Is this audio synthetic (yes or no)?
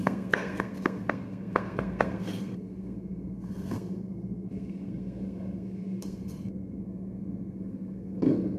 yes